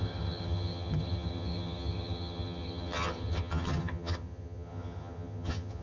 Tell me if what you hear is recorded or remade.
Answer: remade